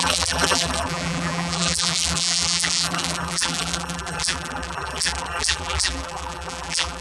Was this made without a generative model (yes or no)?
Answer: no